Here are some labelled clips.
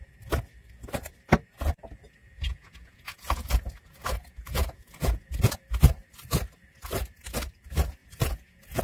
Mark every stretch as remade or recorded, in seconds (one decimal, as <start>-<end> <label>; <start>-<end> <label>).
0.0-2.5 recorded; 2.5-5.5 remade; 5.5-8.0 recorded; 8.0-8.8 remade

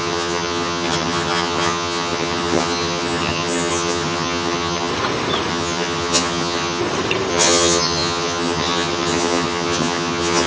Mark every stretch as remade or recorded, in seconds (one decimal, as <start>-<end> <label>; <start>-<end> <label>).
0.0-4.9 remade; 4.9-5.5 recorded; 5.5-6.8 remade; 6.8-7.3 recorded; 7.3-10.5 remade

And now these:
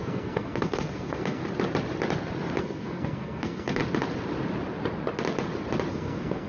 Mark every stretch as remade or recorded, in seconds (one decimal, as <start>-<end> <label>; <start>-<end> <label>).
0.0-1.4 remade; 1.4-2.6 recorded; 2.6-3.8 remade; 3.8-5.9 recorded; 5.9-6.5 remade